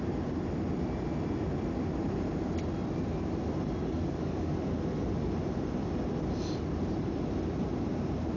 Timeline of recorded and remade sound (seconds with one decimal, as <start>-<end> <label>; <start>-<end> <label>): 0.0-3.8 recorded; 3.8-4.5 remade; 4.5-8.4 recorded